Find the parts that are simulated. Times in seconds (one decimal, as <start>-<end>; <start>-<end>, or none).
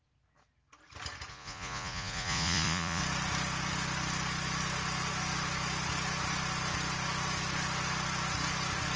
1.3-3.0